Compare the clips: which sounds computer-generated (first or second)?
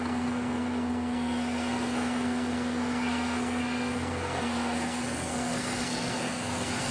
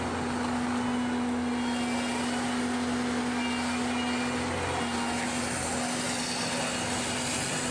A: first